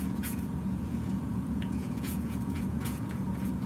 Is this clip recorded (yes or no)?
no